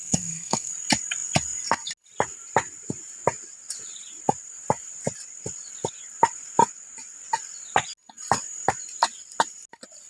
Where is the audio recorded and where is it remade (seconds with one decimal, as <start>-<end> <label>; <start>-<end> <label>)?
0.0-0.7 remade; 0.7-10.1 recorded